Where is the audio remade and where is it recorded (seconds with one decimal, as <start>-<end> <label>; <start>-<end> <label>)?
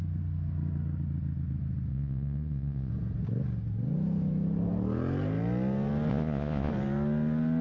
0.0-1.9 recorded; 1.9-2.9 remade; 2.9-6.1 recorded; 6.1-6.7 remade; 6.7-7.6 recorded